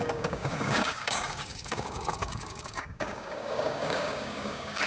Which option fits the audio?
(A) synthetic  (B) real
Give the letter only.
A